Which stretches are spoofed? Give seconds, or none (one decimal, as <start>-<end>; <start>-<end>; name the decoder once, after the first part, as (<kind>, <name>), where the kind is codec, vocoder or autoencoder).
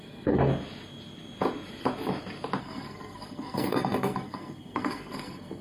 0.0-0.5 (codec, SNAC); 2.6-5.6